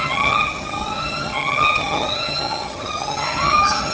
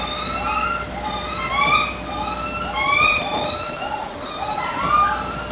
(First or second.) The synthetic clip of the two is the first